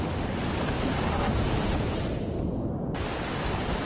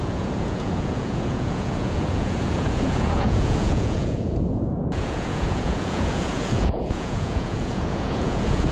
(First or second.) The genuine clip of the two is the first